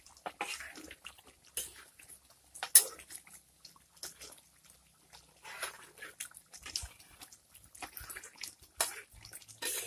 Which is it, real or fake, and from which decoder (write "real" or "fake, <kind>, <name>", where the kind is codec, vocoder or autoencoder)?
real